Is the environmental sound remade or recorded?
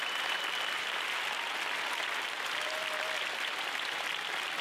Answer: recorded